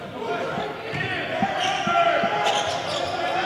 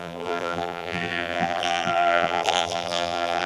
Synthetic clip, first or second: second